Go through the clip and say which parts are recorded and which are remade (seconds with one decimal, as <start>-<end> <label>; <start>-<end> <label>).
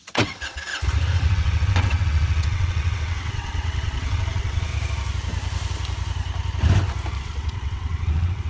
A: 0.0-0.7 remade; 0.7-1.2 recorded; 1.2-4.7 remade; 4.7-7.2 recorded; 7.2-8.5 remade